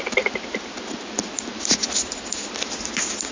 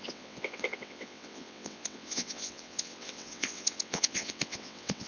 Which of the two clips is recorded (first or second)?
first